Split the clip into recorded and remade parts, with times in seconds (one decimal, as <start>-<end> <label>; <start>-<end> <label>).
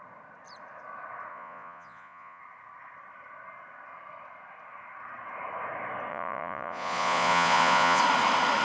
0.0-1.3 recorded; 1.3-2.4 remade; 2.4-6.1 recorded; 6.1-8.0 remade; 8.0-8.6 recorded